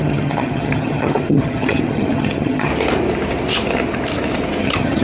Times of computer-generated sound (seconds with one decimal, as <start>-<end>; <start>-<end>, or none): 0.0-2.7; 4.6-5.0